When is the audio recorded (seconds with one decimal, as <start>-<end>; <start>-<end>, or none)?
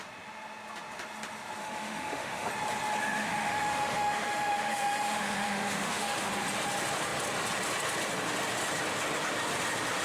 0.0-1.6; 2.5-3.0; 6.3-10.0